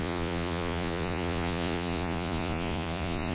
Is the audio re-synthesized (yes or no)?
yes